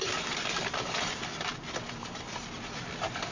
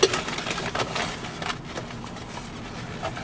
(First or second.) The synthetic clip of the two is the first